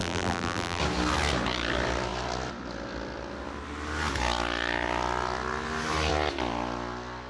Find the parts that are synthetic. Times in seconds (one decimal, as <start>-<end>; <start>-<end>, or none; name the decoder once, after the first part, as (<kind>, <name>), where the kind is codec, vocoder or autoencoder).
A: 0.0-0.8 (vocoder, BigVGAN v2)